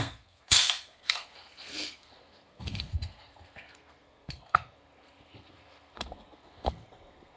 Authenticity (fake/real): fake